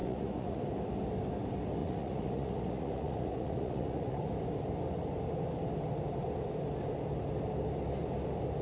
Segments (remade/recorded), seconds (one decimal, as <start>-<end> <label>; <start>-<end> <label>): 0.0-0.6 remade; 0.6-1.8 recorded; 1.8-4.3 remade; 4.3-8.6 recorded